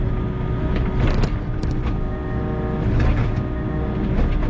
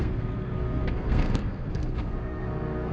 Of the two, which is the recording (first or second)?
first